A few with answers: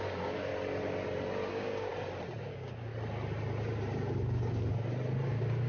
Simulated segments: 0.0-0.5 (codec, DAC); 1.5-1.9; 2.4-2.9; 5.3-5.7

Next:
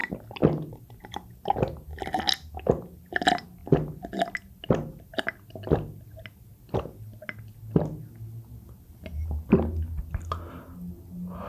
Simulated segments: none

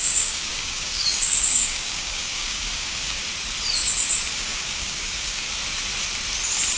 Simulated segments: 0.0-3.2 (codec, DAC); 4.3-5.6